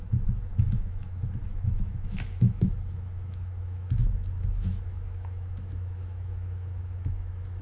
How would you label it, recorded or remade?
remade